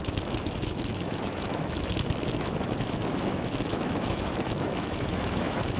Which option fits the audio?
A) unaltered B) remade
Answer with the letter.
B